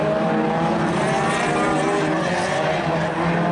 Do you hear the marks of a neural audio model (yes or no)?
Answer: no